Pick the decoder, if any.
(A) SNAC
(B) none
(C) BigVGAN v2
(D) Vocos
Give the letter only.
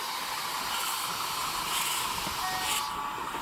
B